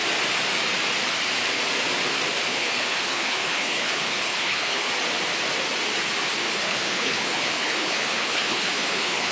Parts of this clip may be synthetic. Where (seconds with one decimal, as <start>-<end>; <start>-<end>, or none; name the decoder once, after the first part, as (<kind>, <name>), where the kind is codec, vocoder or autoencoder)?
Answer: 2.5-4.9 (codec, HILCodec); 6.4-9.3